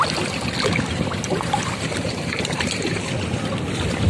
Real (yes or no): yes